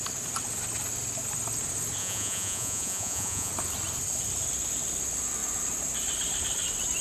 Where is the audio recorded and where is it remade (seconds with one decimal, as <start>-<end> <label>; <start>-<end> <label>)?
0.0-2.0 recorded; 2.0-3.5 remade; 3.5-7.0 recorded